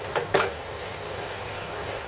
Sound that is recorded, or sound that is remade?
remade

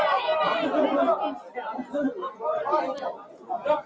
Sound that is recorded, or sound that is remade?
recorded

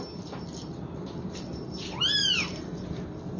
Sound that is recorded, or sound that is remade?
recorded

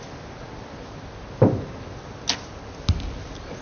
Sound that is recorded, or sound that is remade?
recorded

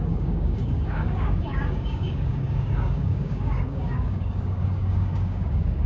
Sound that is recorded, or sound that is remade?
remade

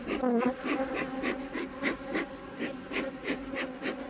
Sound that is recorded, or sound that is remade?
recorded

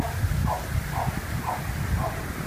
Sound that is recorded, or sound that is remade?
recorded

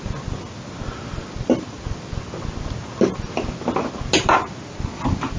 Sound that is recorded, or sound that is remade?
recorded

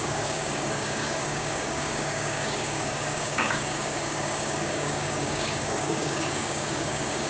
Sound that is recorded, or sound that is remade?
remade